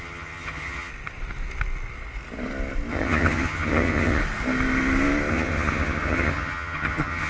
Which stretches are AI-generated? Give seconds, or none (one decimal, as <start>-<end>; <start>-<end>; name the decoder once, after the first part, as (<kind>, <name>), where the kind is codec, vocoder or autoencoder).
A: 0.0-0.9 (vocoder, HiFi-GAN); 2.9-4.2; 5.3-7.3